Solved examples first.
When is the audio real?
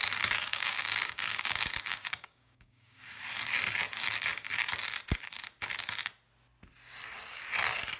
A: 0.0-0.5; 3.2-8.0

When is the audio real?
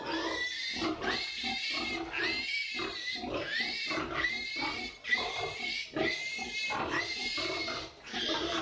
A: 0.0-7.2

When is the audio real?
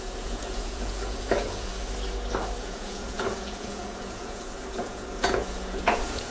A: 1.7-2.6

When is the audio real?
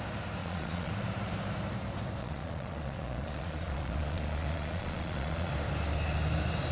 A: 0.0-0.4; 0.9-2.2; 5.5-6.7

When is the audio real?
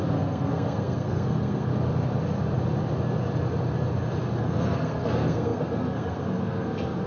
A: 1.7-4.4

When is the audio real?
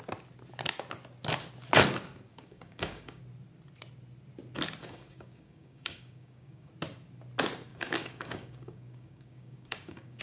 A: 0.0-2.3; 3.2-4.8; 6.7-7.7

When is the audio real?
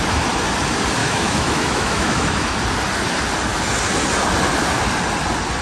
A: 0.0-1.0; 2.5-5.6